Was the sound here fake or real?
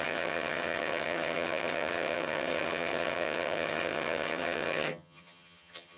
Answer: fake